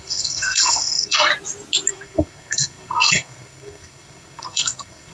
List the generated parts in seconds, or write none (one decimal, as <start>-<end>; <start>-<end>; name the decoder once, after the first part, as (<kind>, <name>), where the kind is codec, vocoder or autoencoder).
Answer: 0.0-1.3 (codec, SNAC); 1.9-5.1